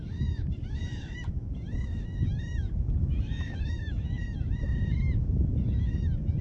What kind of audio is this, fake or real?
fake